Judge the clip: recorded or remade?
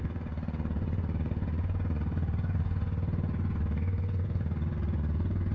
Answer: remade